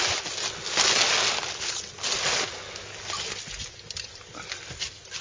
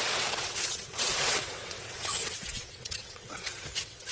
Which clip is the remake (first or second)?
second